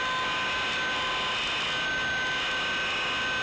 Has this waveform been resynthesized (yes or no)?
no